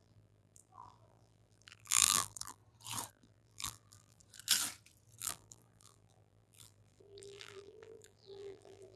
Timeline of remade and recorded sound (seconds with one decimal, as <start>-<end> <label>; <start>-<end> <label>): 0.0-2.6 remade; 2.6-3.1 recorded; 3.1-4.2 remade; 4.2-5.2 recorded; 5.2-9.0 remade